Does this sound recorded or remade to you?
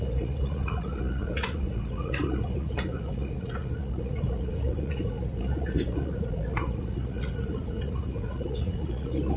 remade